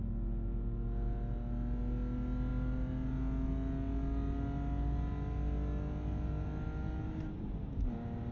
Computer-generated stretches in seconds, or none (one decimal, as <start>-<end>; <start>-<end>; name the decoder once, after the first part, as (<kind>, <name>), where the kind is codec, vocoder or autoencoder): none